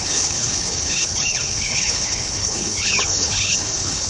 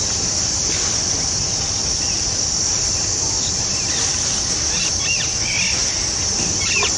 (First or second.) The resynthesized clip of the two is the first